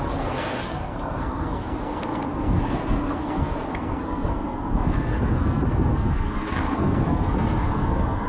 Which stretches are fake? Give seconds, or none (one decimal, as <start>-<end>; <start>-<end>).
0.0-8.3